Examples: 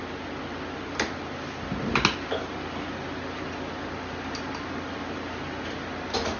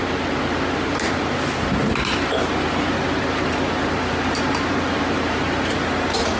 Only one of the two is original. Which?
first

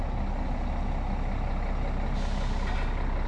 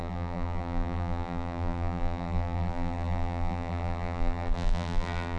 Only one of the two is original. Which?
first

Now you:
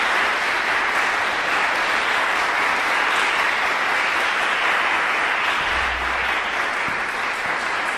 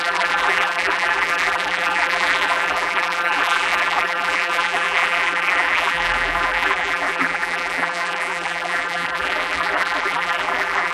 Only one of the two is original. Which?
first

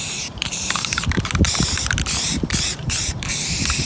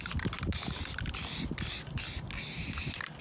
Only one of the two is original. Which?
second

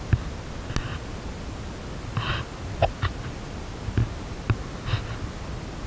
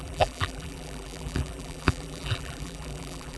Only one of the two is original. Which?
first